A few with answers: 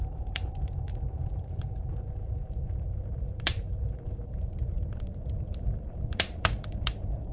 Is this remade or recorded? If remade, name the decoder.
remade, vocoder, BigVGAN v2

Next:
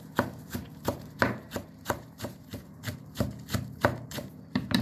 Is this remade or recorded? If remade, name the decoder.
remade, vocoder, BigVGAN v2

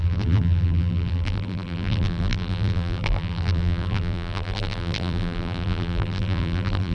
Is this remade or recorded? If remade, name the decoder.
remade, vocoder, BigVGAN v2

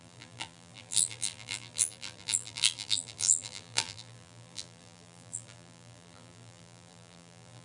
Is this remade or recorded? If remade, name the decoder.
remade, vocoder, BigVGAN v2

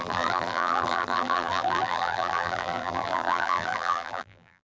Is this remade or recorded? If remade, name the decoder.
remade, vocoder, BigVGAN v2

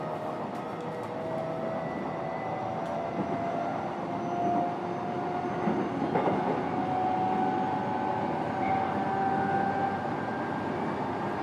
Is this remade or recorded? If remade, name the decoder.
recorded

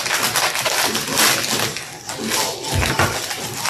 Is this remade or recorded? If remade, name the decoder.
recorded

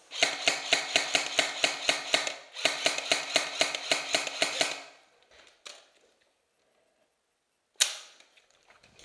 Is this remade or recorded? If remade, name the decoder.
recorded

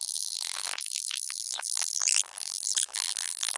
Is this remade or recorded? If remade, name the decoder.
remade, vocoder, BigVGAN v2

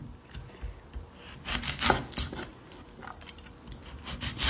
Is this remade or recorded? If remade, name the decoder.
recorded